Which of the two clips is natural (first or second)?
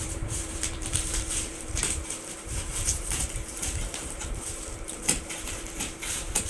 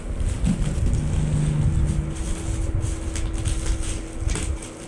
second